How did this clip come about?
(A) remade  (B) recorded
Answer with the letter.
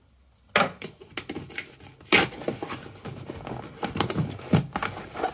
B